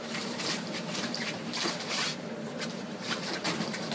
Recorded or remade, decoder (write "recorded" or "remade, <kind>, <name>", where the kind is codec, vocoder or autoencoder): remade, vocoder, BigVGAN v2